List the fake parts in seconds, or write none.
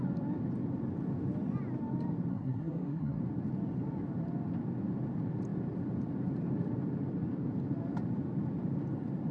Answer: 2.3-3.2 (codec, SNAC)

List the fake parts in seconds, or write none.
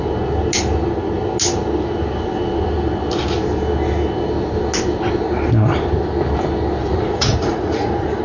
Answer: 6.8-8.2 (vocoder, Vocos)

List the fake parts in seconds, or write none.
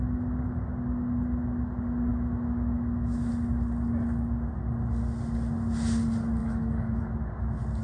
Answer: 2.1-3.3 (autoencoder, DAC-VAE); 6.4-7.0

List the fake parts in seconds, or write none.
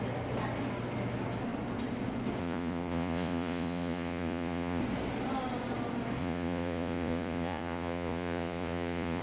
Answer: 2.4-4.8 (vocoder, Vocos); 6.2-9.2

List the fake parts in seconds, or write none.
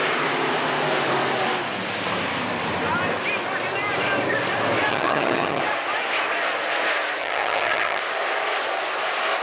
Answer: 4.9-5.6 (vocoder, HiFi-GAN); 7.2-8.0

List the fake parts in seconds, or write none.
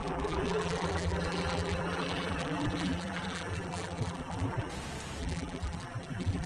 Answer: 0.0-4.7 (vocoder, BigVGAN v2); 5.2-6.5